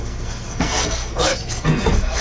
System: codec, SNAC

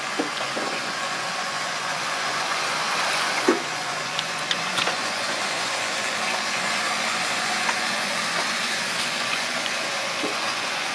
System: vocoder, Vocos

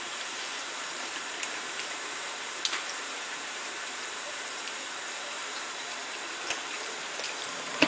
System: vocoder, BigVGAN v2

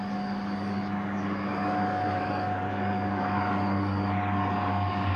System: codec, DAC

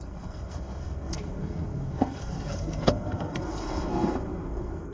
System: codec, SNAC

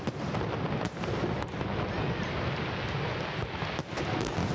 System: none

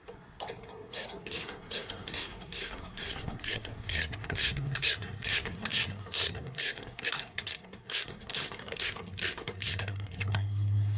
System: codec, SNAC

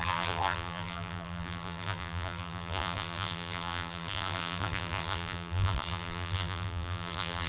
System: vocoder, BigVGAN v2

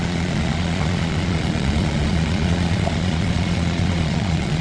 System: vocoder, Vocos